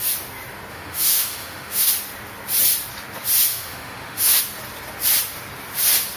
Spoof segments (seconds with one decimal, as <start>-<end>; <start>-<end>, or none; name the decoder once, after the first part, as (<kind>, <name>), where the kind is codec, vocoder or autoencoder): 0.7-1.9 (autoencoder, DAC-VAE); 3.5-4.4

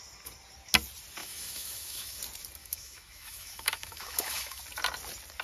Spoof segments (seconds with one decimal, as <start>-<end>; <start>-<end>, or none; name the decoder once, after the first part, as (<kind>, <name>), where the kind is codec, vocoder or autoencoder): 1.2-2.2 (autoencoder, DAC-VAE); 2.6-4.6

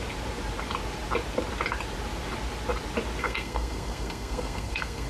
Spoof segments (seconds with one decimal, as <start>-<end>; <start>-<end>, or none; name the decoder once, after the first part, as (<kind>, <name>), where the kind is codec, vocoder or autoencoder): 3.2-5.1 (codec, SNAC)

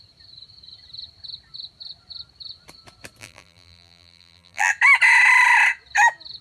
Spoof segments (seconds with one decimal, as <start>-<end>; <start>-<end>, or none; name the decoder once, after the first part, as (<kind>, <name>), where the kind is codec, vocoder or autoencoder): 3.2-4.7 (vocoder, BigVGAN v2)

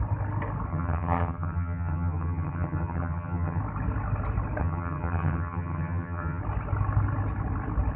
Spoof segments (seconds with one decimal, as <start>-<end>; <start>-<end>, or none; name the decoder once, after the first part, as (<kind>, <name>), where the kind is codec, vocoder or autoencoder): 0.7-3.6 (vocoder, HiFi-GAN); 4.6-6.4